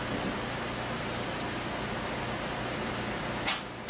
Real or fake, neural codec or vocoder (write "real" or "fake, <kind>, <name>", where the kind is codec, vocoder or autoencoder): real